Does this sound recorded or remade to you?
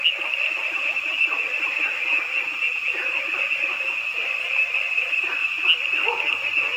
recorded